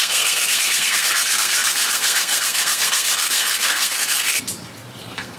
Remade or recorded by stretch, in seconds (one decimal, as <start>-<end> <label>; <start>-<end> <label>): 0.0-4.4 remade; 4.4-5.0 recorded; 5.0-5.4 remade